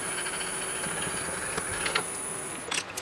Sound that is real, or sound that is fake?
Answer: real